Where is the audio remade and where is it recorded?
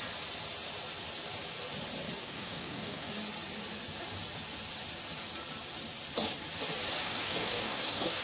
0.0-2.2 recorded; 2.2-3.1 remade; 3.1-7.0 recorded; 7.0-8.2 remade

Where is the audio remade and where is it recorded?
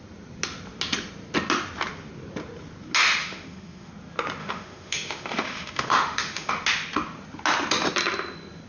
0.0-3.2 recorded; 3.2-3.9 remade; 3.9-4.4 recorded; 4.4-6.5 remade; 6.5-8.7 recorded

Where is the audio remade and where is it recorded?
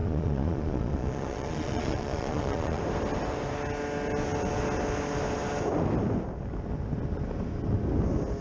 0.0-2.8 remade; 2.8-8.4 recorded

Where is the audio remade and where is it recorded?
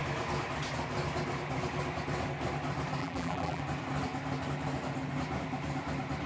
0.0-3.0 recorded; 3.0-3.6 remade; 3.6-6.3 recorded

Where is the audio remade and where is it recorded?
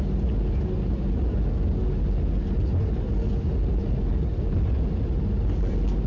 0.0-6.1 recorded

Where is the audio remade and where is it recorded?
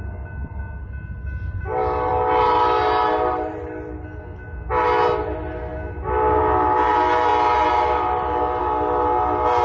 0.0-9.6 recorded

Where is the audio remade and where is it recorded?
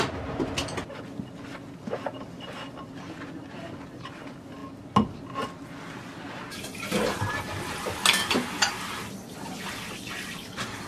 0.0-10.9 recorded